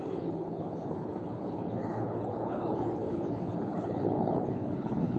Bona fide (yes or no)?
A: no